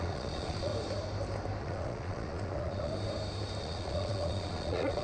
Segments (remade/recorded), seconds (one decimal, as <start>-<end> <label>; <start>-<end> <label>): 0.0-0.7 remade; 0.7-1.6 recorded; 1.6-2.9 remade; 2.9-3.6 recorded; 3.6-5.0 remade